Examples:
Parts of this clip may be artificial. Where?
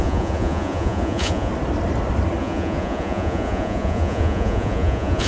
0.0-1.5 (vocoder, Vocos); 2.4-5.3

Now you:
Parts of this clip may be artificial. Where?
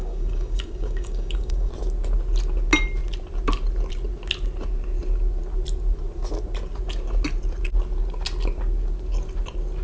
0.0-1.7 (codec, DAC)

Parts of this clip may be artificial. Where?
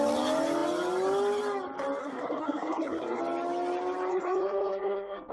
2.0-3.2 (codec, SNAC); 4.1-5.3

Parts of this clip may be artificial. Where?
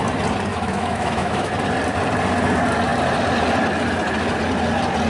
0.5-1.5 (autoencoder, DAC-VAE)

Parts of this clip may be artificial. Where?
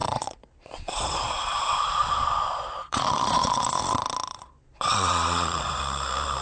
0.0-3.8 (vocoder, Vocos); 4.3-5.8